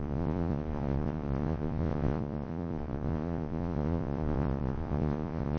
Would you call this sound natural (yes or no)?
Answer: no